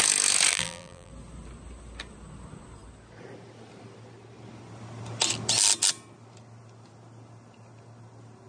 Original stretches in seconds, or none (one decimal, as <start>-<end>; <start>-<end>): 0.0-0.5; 1.1-8.5